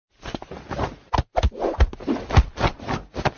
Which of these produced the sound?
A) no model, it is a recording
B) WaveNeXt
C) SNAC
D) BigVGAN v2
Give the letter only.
A